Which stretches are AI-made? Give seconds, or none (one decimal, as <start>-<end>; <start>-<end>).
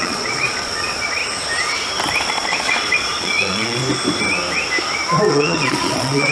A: 0.0-1.2; 2.2-3.8; 5.3-6.3